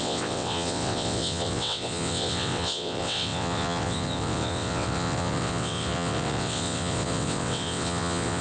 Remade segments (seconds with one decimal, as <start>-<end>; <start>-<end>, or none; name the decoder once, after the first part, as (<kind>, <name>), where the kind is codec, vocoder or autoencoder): 0.0-8.4 (vocoder, WaveNeXt)